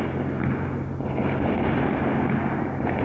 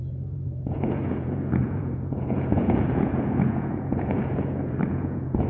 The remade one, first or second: second